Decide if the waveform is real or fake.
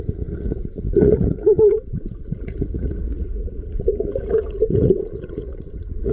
fake